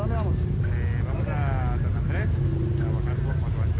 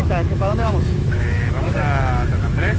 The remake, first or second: second